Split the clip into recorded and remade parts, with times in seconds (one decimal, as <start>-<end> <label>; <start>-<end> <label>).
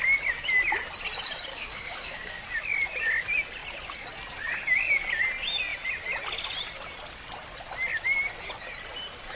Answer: 0.0-1.5 recorded; 1.5-2.4 remade; 2.4-9.4 recorded